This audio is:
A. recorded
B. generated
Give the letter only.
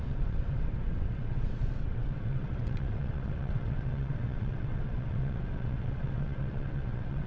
B